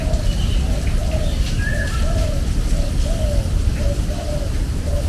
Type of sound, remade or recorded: recorded